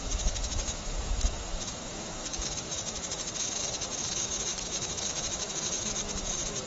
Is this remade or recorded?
remade